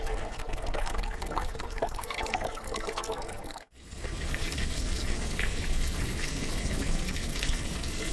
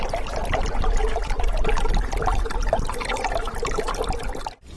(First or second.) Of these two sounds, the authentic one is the second